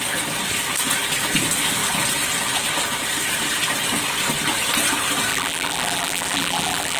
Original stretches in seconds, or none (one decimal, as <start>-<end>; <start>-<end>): 0.0-5.3